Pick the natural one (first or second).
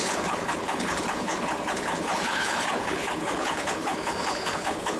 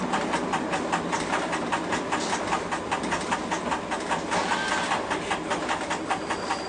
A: second